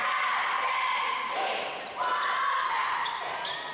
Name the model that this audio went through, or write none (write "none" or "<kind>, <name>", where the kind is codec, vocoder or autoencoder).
none